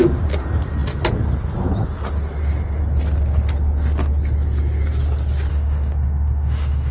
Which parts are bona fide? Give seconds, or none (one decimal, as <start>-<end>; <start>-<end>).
0.0-5.5